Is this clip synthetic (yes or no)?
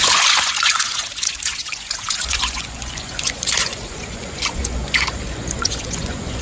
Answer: yes